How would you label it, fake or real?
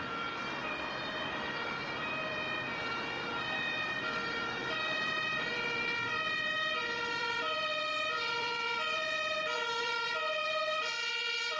fake